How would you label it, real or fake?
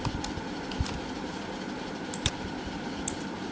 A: real